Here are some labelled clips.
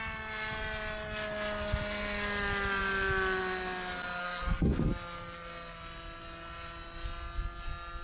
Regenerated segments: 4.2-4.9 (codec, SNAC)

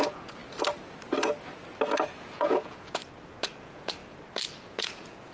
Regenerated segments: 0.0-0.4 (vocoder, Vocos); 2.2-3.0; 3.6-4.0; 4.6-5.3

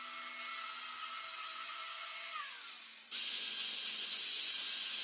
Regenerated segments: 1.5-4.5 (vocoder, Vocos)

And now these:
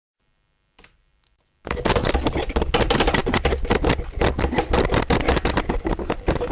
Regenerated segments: none

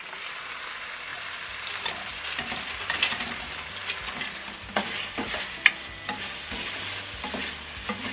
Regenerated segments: none

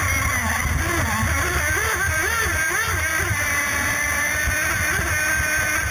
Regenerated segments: 1.8-4.7 (vocoder, BigVGAN v2)